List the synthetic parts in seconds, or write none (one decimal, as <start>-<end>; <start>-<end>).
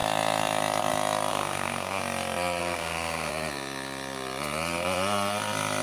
1.3-2.0; 2.6-3.3